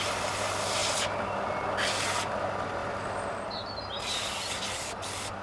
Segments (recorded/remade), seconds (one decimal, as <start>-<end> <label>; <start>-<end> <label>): 0.0-5.4 recorded